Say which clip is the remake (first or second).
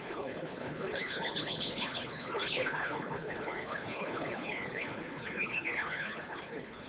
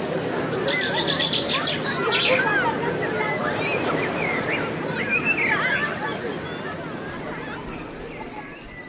first